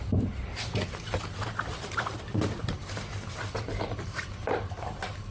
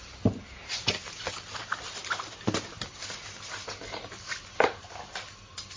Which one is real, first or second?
second